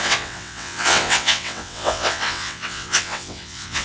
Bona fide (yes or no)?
no